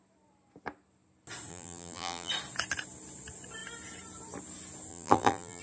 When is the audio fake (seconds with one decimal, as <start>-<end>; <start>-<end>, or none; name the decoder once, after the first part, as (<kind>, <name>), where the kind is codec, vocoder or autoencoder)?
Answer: 1.5-2.3 (vocoder, BigVGAN v2); 4.9-5.6